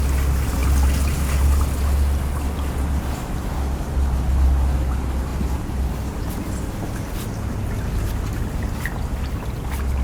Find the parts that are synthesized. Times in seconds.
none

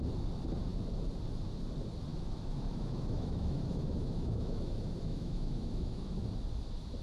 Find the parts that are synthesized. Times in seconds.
2.1-6.3 (autoencoder, DAC-VAE)

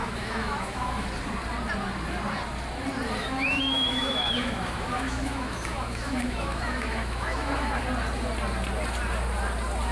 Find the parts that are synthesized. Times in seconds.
0.0-1.1 (autoencoder, DAC-VAE); 3.2-7.8

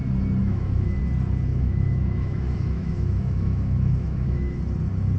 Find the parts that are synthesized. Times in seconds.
0.4-1.0 (autoencoder, DAC-VAE); 1.5-4.6

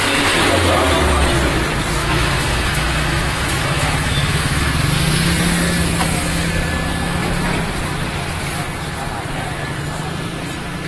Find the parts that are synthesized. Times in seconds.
2.0-4.7 (autoencoder, DAC-VAE); 6.0-6.5

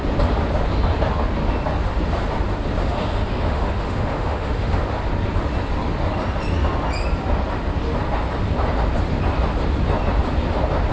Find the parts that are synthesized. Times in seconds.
2.8-4.8 (autoencoder, DAC-VAE)